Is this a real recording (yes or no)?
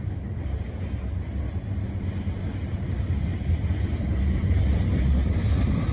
yes